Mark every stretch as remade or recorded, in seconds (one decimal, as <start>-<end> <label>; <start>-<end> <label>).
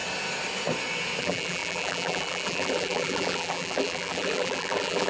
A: 0.0-1.2 recorded; 1.2-5.1 remade